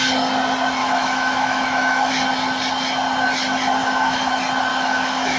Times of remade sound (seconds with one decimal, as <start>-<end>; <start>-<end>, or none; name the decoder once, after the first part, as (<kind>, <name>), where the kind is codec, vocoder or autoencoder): 0.8-2.1 (autoencoder, DAC-VAE); 3.8-4.3; 4.7-5.4